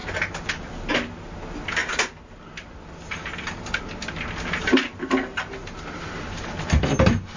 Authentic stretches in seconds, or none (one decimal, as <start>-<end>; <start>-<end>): 0.0-7.4